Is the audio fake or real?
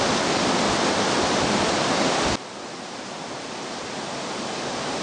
real